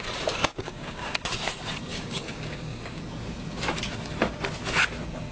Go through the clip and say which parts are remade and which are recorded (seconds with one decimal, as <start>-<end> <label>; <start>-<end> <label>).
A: 0.0-0.4 recorded; 0.4-1.2 remade; 1.2-1.9 recorded; 1.9-3.0 remade; 3.0-5.3 recorded